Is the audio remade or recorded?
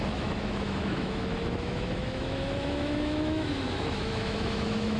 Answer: remade